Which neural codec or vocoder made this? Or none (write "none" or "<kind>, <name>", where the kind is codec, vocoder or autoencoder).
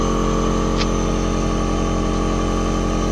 none